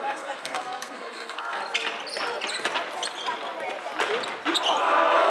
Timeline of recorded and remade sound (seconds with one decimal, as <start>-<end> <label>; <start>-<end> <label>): 0.0-1.6 remade; 1.6-4.8 recorded; 4.8-5.3 remade